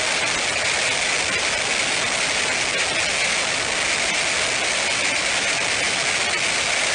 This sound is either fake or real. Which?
real